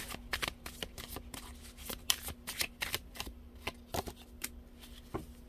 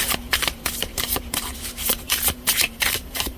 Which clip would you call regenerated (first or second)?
second